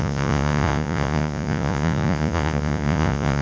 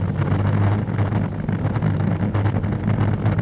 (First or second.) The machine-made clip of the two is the first